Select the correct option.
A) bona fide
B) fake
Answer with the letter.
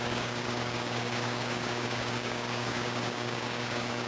B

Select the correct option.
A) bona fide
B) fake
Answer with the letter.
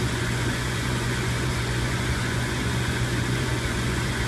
B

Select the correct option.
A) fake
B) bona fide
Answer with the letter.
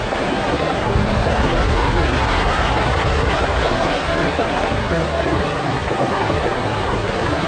A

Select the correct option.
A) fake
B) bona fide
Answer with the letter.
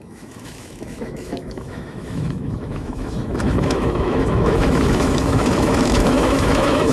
A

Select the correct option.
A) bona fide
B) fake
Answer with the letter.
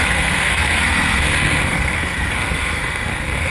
B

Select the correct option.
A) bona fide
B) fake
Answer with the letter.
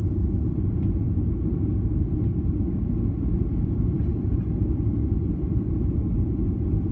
A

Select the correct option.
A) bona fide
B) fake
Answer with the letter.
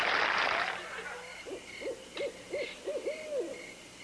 A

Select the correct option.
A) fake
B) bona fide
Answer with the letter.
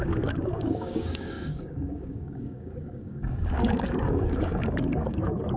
A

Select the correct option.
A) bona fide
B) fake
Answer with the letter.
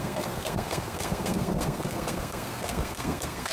B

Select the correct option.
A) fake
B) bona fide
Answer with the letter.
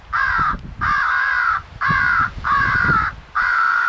A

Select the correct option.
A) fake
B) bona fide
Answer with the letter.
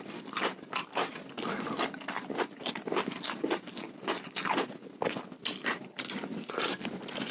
B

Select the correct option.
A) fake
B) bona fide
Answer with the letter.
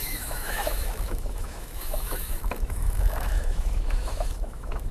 A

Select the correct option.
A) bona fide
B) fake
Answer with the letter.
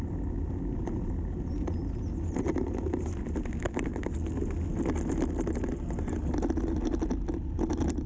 A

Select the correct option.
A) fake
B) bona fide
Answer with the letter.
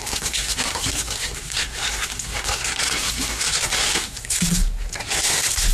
A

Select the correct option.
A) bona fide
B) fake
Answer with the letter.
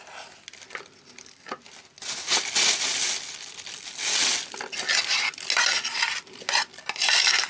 A